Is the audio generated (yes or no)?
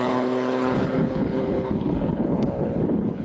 yes